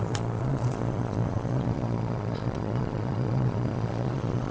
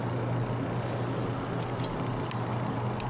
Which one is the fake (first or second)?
first